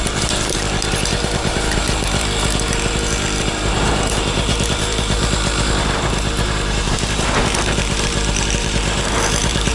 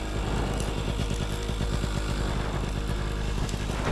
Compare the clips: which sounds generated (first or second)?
first